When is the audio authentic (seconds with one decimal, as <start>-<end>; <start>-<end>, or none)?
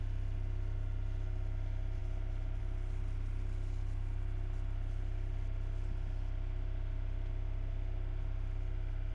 0.0-9.1